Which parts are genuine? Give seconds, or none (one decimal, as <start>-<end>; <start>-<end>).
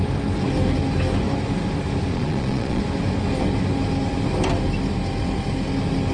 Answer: 0.0-2.1; 2.8-6.1